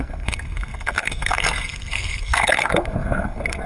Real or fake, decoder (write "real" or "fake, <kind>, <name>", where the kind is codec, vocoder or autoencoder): fake, codec, SNAC